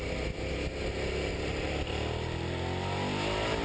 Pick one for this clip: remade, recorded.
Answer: recorded